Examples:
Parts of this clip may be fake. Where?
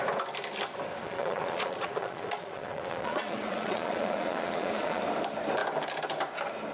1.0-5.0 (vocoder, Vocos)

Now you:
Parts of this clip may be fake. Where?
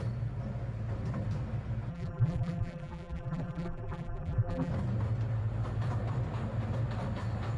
1.9-4.7 (vocoder, BigVGAN v2)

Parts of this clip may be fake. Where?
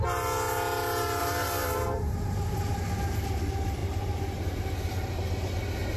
1.2-2.8 (vocoder, BigVGAN v2); 3.8-5.1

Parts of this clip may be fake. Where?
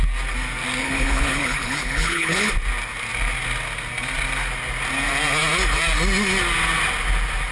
0.8-2.5 (codec, HILCodec)